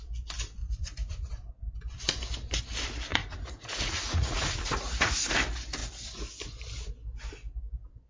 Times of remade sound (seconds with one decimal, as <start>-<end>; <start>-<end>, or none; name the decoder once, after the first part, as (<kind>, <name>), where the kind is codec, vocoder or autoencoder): 0.6-1.3 (vocoder, Vocos); 3.1-5.3